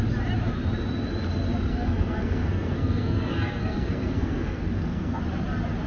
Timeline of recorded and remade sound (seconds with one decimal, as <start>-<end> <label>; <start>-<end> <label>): 0.0-1.7 recorded; 1.7-5.2 remade; 5.2-5.9 recorded

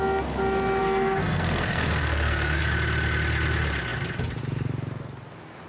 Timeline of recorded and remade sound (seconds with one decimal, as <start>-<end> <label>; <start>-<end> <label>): 0.0-0.8 recorded; 0.8-2.7 remade; 2.7-5.7 recorded

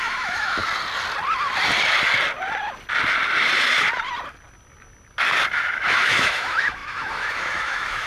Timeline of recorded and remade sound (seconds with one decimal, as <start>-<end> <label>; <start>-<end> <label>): 0.0-0.6 remade; 0.6-5.5 recorded; 5.5-8.1 remade

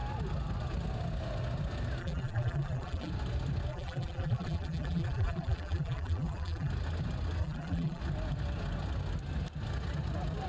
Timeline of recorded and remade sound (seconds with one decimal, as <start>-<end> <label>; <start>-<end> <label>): 0.0-2.0 recorded; 2.0-3.1 remade; 3.1-3.7 recorded; 3.7-6.7 remade; 6.7-7.4 recorded; 7.4-8.0 remade; 8.0-10.5 recorded

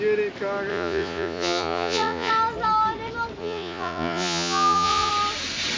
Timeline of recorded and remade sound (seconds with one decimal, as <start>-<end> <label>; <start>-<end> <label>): 0.0-0.7 recorded; 0.7-2.3 remade; 2.3-3.4 recorded; 3.4-5.1 remade; 5.1-5.8 recorded

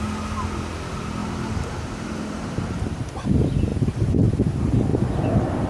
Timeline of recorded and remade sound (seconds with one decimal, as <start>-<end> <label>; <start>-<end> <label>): 0.0-1.2 recorded; 1.2-2.6 remade; 2.6-3.7 recorded; 3.7-4.5 remade; 4.5-5.7 recorded

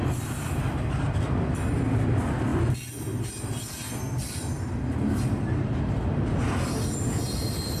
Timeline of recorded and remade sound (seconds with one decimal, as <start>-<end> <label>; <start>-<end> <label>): 0.0-7.8 recorded

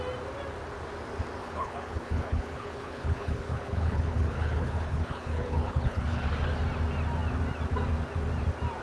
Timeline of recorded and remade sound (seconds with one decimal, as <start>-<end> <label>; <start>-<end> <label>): 0.0-1.4 recorded; 1.4-6.3 remade; 6.3-8.8 recorded